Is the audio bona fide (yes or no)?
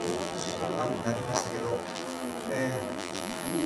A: no